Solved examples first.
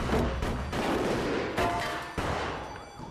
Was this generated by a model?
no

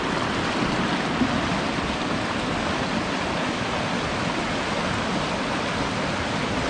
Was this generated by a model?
no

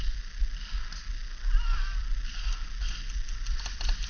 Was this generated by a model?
no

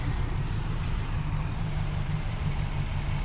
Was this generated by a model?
yes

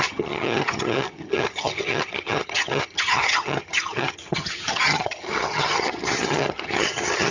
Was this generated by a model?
yes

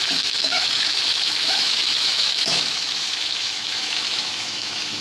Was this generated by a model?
yes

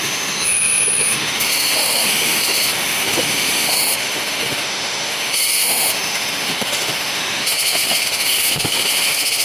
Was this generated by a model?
yes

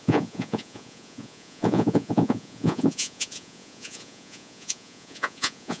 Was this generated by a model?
yes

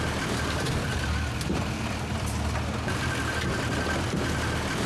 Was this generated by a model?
no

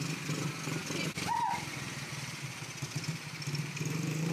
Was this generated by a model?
no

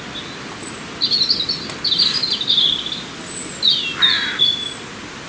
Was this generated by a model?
no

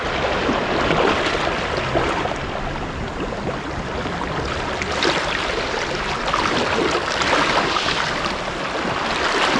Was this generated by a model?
no